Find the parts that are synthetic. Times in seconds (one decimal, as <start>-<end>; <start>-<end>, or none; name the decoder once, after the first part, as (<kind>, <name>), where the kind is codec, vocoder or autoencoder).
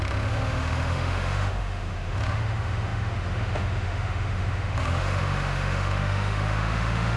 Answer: 0.0-7.2 (autoencoder, DAC-VAE)